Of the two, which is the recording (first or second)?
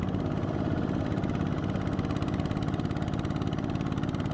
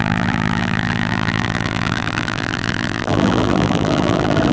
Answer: first